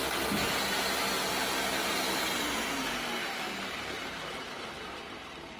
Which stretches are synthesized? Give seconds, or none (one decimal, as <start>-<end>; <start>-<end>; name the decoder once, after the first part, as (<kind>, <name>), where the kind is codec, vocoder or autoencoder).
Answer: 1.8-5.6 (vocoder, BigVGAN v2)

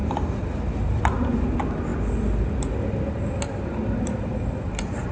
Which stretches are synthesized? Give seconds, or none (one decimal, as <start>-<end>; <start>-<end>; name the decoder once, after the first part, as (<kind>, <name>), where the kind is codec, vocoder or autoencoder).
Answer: none

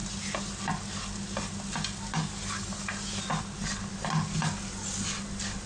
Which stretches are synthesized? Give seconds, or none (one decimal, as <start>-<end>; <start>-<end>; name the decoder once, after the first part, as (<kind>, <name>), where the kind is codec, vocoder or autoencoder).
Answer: none

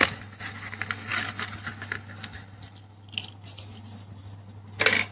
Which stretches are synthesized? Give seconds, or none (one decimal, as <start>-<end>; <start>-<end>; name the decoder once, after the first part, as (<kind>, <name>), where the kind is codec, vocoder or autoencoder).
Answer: none

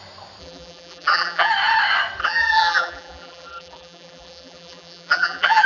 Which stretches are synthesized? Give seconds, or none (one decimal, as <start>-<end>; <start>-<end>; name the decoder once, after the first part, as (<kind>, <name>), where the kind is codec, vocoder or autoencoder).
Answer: 0.4-1.5 (vocoder, BigVGAN v2); 2.2-5.7